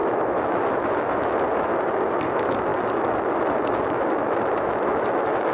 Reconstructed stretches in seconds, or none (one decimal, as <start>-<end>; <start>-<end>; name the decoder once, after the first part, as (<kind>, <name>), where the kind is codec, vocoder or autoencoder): 0.0-1.7 (autoencoder, DAC-VAE); 2.3-5.5